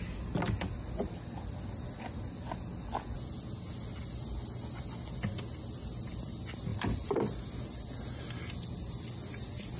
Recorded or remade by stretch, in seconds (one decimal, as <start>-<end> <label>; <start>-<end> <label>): 0.0-9.8 recorded